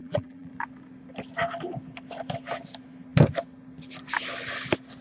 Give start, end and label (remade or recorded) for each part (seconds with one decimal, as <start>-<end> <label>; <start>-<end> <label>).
0.0-0.5 remade; 0.5-5.0 recorded